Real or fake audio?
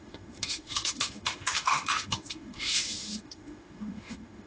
fake